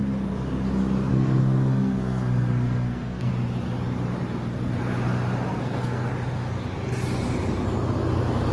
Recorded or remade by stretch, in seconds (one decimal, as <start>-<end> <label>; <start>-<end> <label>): 0.0-1.1 recorded; 1.1-3.3 remade; 3.3-5.5 recorded; 5.5-6.1 remade; 6.1-8.5 recorded